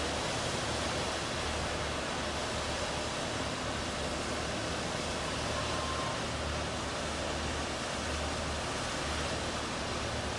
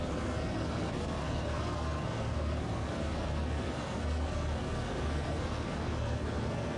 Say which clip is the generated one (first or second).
second